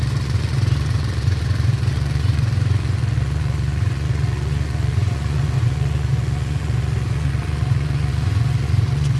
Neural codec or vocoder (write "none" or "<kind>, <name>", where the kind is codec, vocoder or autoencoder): vocoder, Vocos